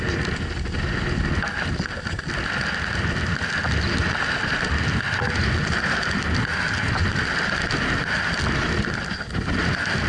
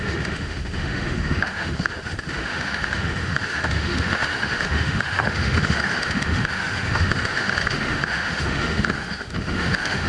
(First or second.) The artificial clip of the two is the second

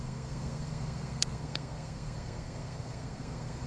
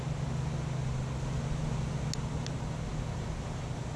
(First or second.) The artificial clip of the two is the first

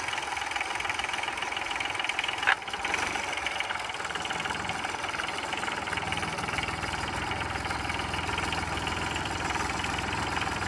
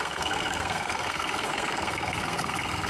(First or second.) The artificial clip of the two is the second